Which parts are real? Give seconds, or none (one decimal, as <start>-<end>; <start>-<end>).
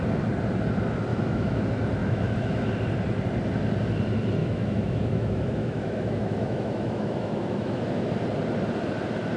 0.0-1.1; 1.6-2.0; 2.7-4.4; 8.1-9.4